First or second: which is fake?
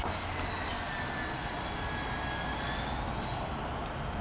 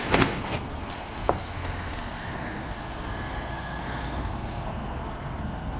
second